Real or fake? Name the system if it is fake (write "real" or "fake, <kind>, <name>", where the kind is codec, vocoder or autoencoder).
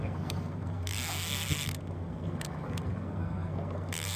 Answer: fake, codec, SNAC